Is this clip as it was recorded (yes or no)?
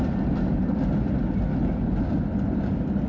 yes